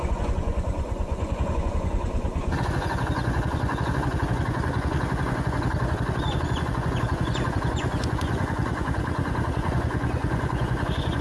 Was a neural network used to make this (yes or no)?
yes